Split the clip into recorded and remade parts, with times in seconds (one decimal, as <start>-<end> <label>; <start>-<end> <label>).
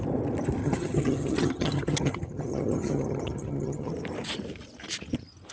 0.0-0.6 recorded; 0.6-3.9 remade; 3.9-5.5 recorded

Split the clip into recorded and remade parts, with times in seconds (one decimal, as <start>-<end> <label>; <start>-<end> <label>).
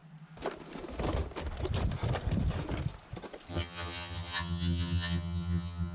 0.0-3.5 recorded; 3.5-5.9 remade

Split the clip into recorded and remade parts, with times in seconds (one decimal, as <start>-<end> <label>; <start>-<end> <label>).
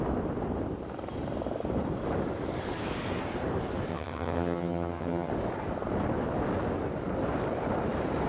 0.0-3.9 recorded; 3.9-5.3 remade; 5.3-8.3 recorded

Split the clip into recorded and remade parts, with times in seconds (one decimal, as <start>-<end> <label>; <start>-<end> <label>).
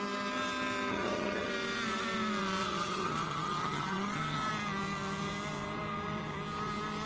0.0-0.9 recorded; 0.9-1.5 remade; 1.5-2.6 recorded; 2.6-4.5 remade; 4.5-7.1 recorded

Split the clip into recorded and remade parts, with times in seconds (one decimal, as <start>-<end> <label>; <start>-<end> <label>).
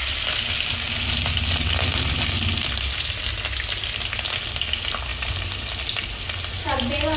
0.0-7.2 recorded